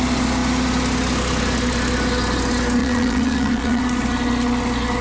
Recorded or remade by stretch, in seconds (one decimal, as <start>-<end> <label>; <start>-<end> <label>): 0.0-2.8 recorded; 2.8-3.8 remade; 3.8-5.0 recorded